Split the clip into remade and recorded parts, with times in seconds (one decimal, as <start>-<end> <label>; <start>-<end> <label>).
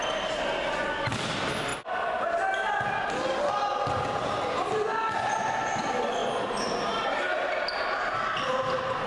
0.0-6.2 recorded; 6.2-7.5 remade; 7.5-9.1 recorded